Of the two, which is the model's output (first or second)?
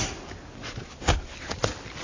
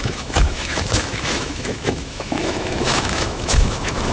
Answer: second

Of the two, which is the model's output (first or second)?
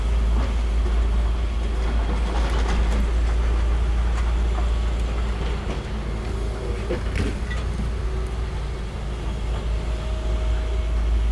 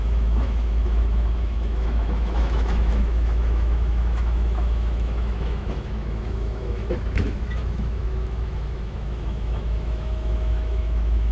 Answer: second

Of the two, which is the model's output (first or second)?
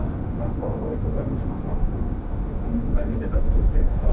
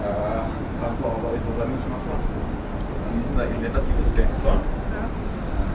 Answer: first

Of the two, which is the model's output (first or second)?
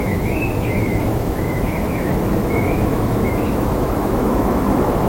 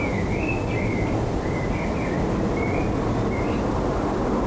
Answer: first